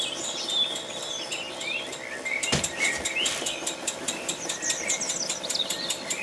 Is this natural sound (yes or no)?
yes